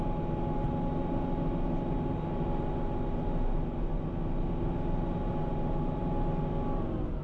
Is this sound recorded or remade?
recorded